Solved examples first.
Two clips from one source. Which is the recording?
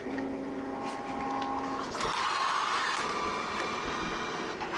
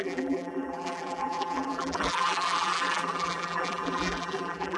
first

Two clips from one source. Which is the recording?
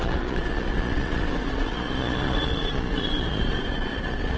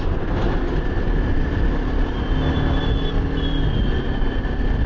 second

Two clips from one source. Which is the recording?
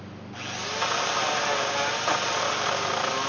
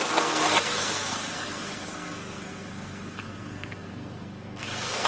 first